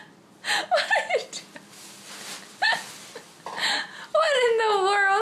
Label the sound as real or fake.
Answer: real